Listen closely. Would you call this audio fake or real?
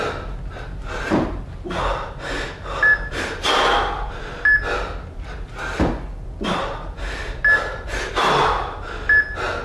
real